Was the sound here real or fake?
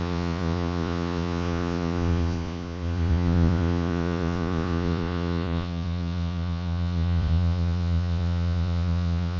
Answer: fake